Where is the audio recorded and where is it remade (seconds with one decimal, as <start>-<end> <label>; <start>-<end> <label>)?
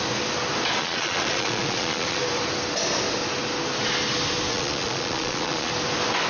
0.0-0.8 recorded; 0.8-2.2 remade; 2.2-4.5 recorded; 4.5-5.7 remade; 5.7-6.3 recorded